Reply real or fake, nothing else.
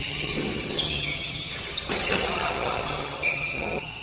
fake